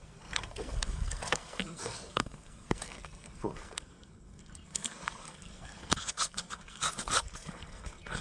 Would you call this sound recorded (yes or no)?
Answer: no